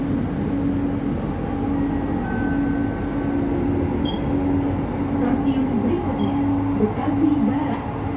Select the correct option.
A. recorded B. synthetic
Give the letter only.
A